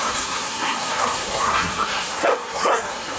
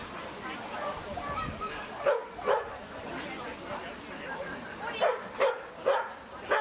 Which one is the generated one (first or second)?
first